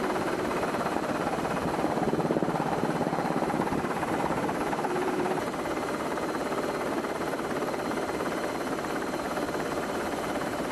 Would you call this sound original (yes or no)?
no